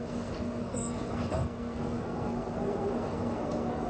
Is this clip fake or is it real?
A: fake